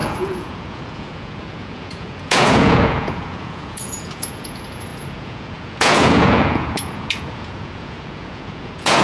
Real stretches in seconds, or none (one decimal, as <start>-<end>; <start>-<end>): none